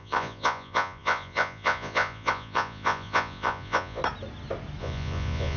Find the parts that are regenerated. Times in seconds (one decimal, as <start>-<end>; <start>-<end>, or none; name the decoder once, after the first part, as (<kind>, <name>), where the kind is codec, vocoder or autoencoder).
0.0-4.0 (vocoder, Vocos); 4.8-5.6